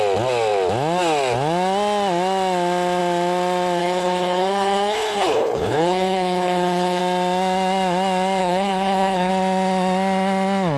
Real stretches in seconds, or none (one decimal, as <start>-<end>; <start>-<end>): 0.0-3.8; 7.0-8.4; 9.3-10.8